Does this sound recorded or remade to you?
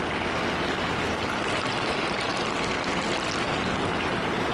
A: recorded